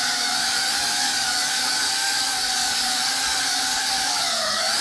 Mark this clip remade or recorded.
remade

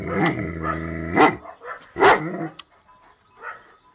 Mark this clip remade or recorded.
recorded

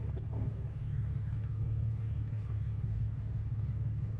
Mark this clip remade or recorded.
remade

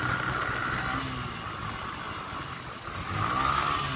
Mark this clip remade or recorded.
recorded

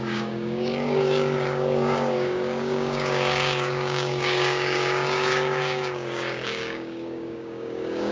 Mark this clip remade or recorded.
remade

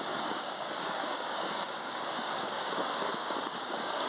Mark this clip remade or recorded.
remade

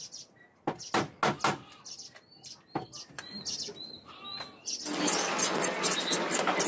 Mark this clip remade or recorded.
recorded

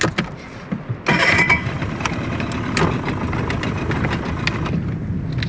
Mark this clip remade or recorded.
recorded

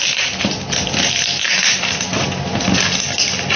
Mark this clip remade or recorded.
recorded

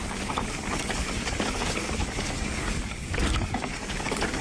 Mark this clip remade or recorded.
remade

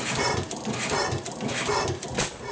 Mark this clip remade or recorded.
recorded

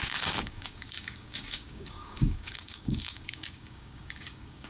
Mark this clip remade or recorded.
remade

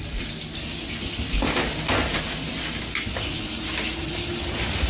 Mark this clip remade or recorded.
recorded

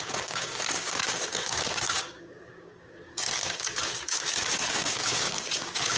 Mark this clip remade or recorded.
remade